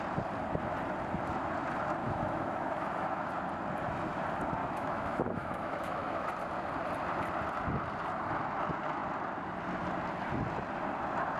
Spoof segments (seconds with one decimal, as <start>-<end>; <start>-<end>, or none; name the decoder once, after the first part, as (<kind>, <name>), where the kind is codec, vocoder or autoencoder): 2.0-3.3 (autoencoder, DAC-VAE); 4.6-6.3